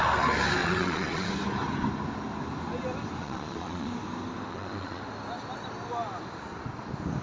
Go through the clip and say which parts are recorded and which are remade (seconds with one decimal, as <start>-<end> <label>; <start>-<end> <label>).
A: 0.0-0.6 recorded; 0.6-1.3 remade; 1.3-3.2 recorded; 3.2-3.9 remade; 3.9-4.5 recorded; 4.5-5.0 remade; 5.0-7.2 recorded